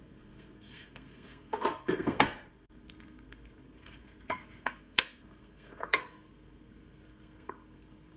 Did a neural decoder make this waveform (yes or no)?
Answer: yes